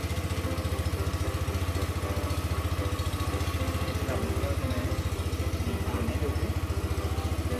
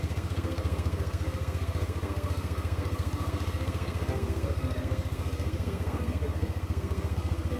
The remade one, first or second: second